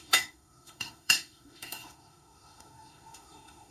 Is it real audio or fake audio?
fake